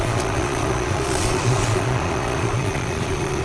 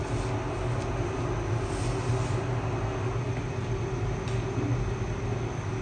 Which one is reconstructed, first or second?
first